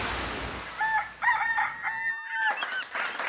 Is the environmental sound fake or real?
real